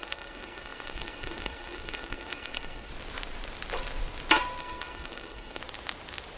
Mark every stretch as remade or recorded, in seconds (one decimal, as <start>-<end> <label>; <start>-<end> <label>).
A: 0.0-2.9 remade; 2.9-4.6 recorded; 4.6-5.6 remade; 5.6-6.4 recorded